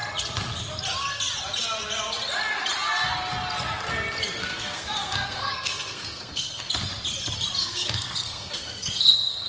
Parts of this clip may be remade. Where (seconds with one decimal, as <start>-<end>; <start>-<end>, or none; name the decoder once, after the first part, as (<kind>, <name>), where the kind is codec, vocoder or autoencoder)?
4.4-6.6 (codec, SNAC); 7.6-9.5